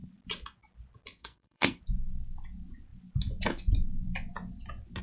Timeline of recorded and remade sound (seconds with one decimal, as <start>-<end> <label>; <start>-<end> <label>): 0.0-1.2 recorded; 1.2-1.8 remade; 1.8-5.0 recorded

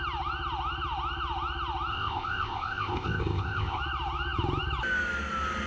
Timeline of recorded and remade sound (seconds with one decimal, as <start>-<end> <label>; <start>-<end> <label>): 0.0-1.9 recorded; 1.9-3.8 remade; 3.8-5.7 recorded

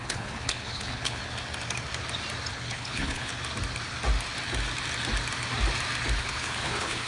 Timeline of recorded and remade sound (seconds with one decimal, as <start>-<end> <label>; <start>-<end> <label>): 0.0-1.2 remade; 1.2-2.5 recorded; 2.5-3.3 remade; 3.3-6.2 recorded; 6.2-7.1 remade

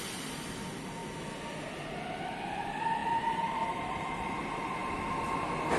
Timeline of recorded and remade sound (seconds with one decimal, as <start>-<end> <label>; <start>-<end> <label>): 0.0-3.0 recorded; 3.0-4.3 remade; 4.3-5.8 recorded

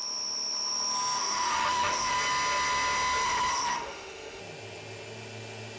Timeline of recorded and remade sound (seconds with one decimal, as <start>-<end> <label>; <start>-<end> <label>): 0.0-1.2 recorded; 1.2-2.1 remade; 2.1-3.7 recorded; 3.7-4.4 remade; 4.4-5.8 recorded